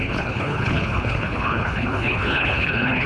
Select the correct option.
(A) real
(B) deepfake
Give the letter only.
B